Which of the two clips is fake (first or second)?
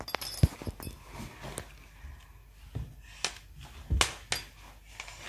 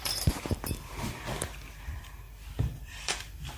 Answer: second